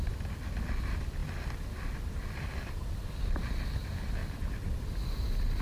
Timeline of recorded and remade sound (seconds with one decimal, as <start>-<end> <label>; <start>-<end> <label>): 0.0-5.6 recorded